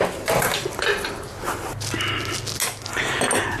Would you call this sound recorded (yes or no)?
yes